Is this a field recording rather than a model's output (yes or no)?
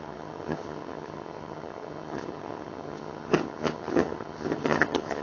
no